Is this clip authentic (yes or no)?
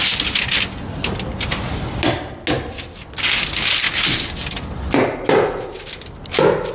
yes